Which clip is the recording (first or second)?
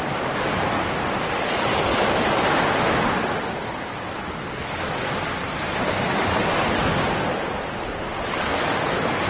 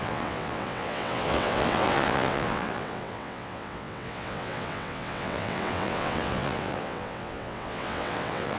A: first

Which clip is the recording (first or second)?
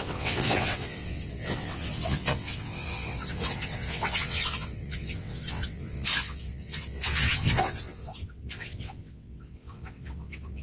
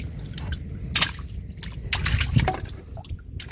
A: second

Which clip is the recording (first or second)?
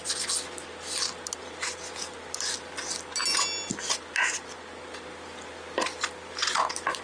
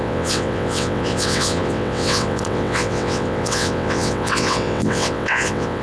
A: first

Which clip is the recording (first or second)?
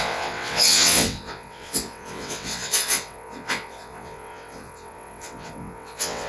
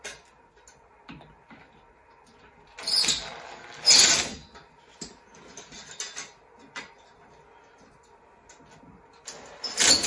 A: second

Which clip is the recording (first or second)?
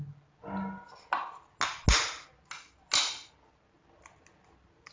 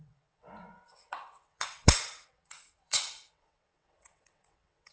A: first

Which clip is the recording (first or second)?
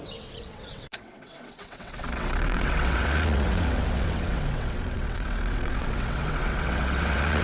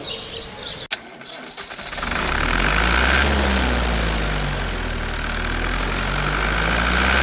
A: second